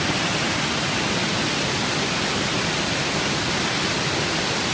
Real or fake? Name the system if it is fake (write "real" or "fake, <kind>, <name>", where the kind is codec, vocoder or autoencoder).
real